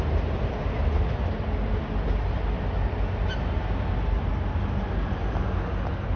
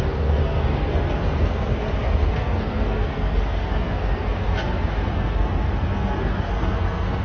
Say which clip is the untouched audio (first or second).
first